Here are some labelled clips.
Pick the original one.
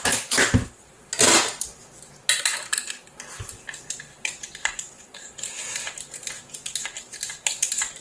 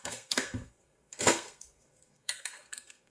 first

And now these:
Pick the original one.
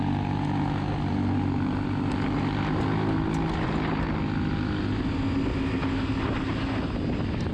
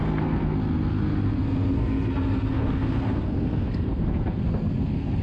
first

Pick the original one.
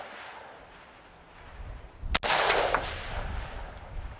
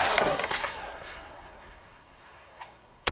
first